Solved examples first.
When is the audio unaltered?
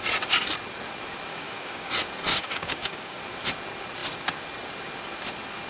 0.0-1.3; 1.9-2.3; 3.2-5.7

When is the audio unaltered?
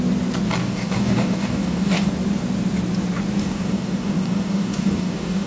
0.0-0.6; 2.1-3.4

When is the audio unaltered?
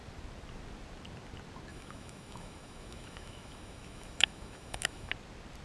0.0-1.7; 5.1-5.6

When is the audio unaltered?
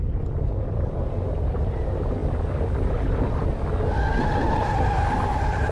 2.2-2.9; 3.4-4.2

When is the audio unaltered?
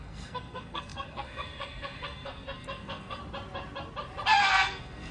3.2-4.4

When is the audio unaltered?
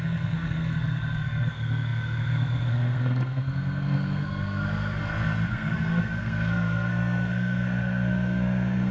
5.0-5.5